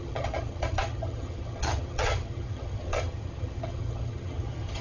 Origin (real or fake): fake